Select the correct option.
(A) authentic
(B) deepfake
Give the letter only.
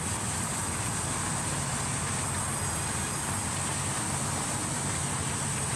A